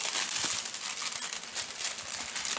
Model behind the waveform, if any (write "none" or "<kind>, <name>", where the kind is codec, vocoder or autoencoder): none